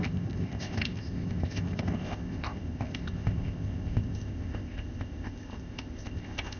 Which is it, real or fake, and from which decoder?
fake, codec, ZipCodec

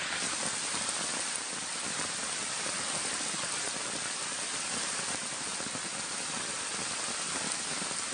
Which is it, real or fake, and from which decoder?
real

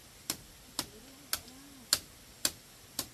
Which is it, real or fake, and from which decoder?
real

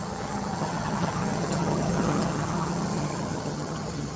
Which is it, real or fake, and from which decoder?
fake, vocoder, HiFi-GAN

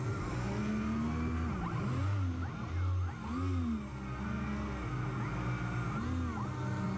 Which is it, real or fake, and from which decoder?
real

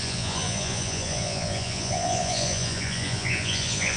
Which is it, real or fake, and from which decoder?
fake, vocoder, Vocos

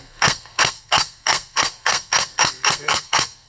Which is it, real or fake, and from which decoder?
fake, codec, SNAC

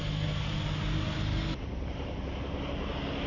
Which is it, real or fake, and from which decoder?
real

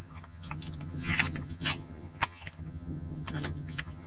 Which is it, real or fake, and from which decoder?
fake, vocoder, HiFi-GAN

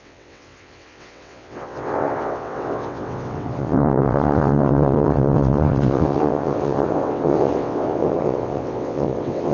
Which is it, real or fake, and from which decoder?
fake, vocoder, WaveNeXt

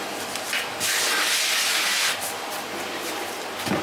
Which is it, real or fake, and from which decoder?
real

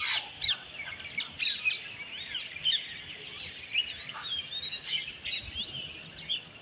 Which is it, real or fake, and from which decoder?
real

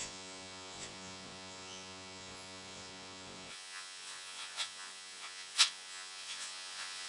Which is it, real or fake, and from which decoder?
fake, vocoder, Vocos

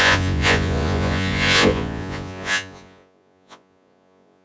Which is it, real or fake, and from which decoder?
fake, vocoder, Vocos